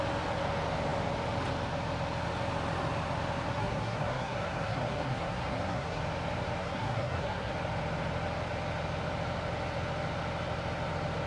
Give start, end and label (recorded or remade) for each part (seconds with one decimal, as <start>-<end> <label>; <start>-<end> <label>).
0.0-3.5 recorded; 3.5-6.0 remade; 6.0-6.6 recorded; 6.6-7.5 remade; 7.5-11.3 recorded

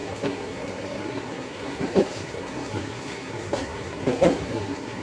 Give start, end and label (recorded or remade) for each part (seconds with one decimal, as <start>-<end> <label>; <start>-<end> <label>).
0.0-5.0 remade

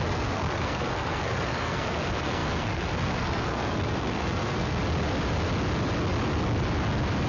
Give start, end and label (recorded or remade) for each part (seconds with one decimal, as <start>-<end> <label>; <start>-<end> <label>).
0.0-4.8 remade; 4.8-7.3 recorded

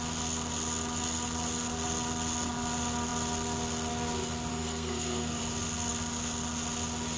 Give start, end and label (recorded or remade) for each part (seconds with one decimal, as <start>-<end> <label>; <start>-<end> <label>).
0.0-4.5 recorded; 4.5-5.4 remade; 5.4-7.2 recorded

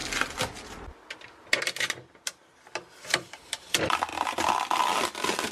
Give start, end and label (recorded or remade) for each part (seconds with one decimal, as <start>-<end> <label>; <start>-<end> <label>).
0.0-5.5 recorded

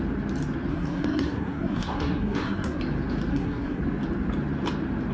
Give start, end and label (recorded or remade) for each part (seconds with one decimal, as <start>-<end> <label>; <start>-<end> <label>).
0.0-0.7 recorded; 0.7-2.8 remade; 2.8-3.3 recorded; 3.3-3.8 remade; 3.8-5.1 recorded

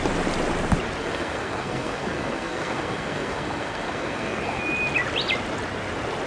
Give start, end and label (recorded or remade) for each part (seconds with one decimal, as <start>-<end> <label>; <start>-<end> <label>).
0.0-1.0 recorded; 1.0-4.6 remade; 4.6-6.3 recorded